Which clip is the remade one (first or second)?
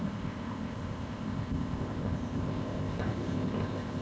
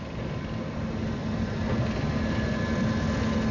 first